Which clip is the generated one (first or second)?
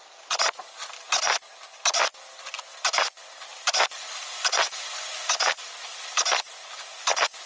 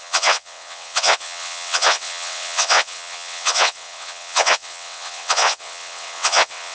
second